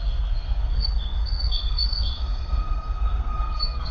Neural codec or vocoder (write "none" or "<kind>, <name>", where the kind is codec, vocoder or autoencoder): codec, SNAC